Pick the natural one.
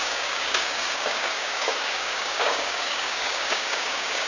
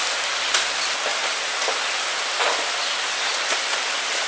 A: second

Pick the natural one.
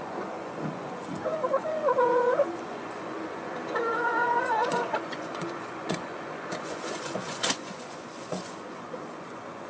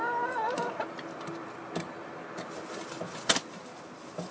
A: second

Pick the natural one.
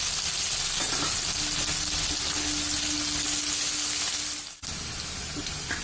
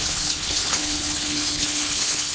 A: first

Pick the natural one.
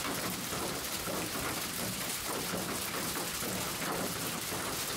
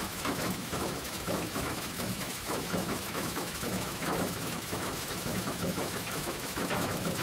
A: first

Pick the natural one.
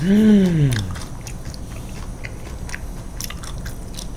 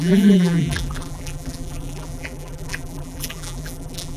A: first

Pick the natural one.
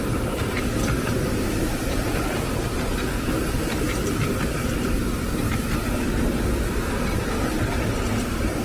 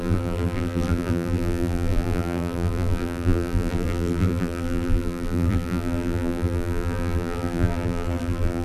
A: first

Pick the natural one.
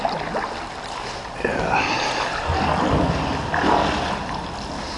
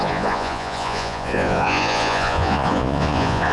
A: first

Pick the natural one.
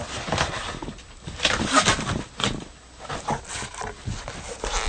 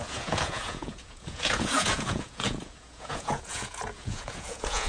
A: first